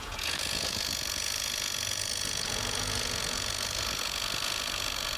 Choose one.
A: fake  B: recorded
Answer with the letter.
A